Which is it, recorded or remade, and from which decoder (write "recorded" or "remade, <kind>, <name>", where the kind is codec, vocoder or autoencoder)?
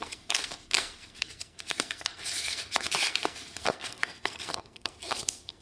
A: remade, codec, SNAC